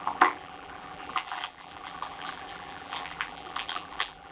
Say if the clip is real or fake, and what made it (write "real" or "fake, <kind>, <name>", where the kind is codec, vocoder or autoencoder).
fake, vocoder, BigVGAN v2